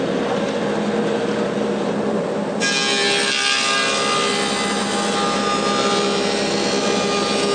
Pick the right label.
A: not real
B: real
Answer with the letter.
B